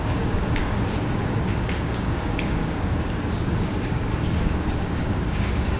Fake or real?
fake